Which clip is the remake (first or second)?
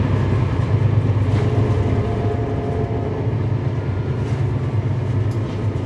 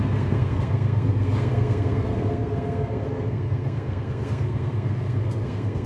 second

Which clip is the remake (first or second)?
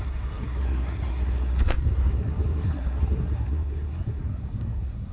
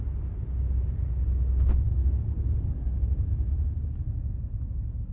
first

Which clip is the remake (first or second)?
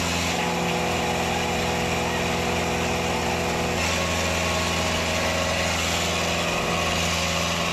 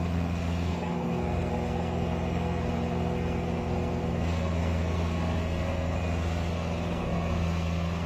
second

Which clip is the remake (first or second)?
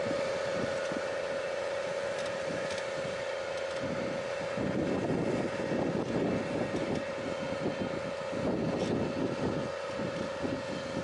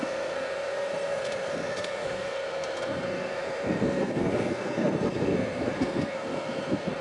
second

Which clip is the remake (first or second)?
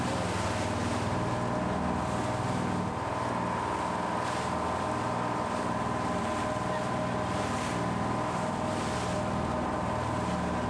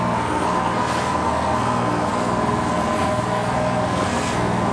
second